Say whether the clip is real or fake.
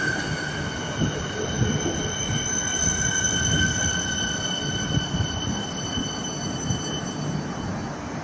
real